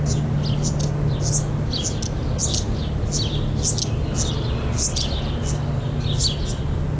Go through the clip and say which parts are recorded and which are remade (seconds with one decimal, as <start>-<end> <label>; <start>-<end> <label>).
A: 0.0-7.0 recorded